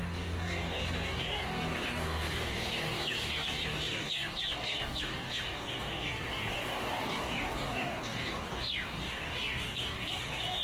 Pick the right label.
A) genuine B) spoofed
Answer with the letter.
B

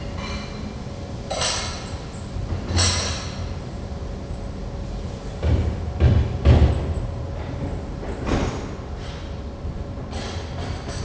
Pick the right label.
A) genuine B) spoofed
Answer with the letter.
A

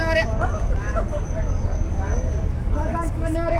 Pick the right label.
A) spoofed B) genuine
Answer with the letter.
A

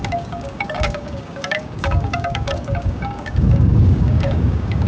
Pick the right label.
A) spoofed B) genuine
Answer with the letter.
A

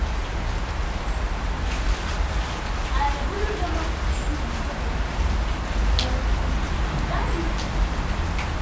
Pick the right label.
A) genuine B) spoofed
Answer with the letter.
A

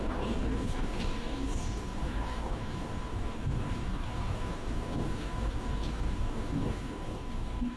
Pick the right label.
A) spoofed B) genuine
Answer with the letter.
A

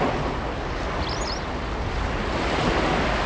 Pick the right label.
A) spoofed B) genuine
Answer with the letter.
B